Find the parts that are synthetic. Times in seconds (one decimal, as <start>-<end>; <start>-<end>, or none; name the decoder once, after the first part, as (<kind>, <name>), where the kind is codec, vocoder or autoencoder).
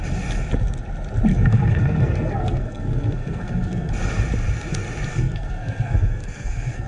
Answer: 1.3-3.9 (codec, SNAC); 5.1-6.9